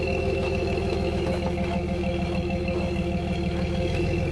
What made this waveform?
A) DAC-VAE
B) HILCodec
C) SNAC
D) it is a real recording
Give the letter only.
A